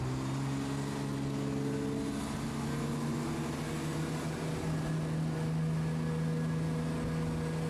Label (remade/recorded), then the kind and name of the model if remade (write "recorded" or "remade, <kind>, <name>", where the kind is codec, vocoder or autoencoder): recorded